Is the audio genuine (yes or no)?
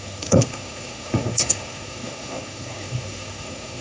no